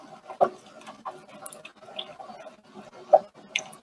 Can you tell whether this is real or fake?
real